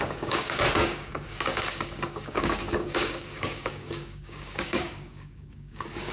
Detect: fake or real fake